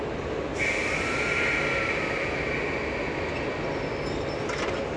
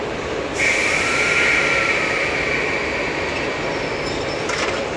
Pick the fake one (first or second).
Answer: second